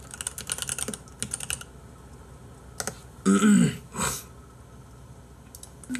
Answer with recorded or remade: recorded